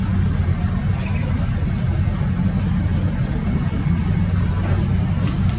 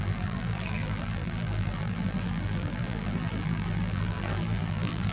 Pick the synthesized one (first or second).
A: second